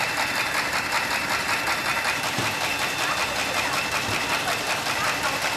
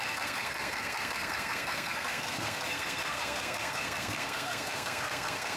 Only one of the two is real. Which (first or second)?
first